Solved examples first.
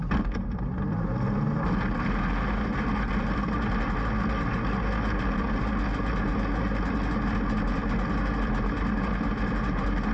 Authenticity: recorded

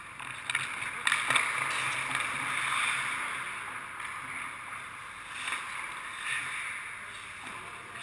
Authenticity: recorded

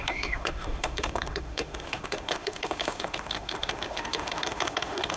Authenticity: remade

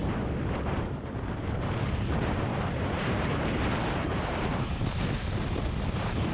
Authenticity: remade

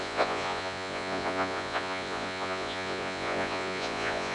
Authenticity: remade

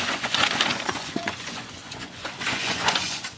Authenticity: remade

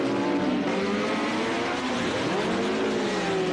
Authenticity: recorded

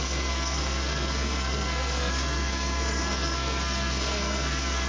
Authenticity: remade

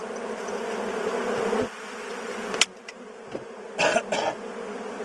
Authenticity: recorded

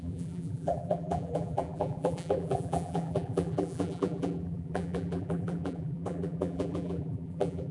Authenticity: remade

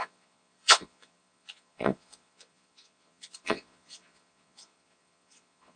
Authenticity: remade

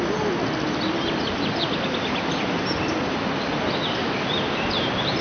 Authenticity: recorded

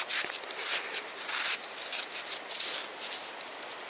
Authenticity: remade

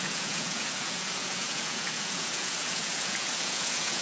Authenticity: remade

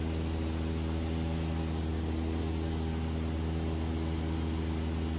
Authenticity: recorded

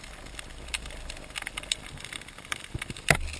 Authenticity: recorded